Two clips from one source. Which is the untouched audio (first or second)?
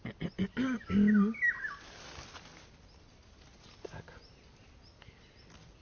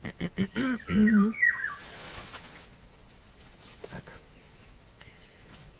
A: first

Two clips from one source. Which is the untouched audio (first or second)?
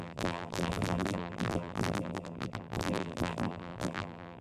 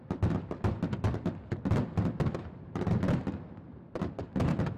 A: second